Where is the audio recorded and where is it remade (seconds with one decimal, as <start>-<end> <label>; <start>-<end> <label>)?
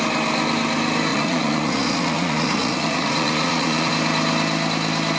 0.0-1.1 recorded; 1.1-3.9 remade; 3.9-5.2 recorded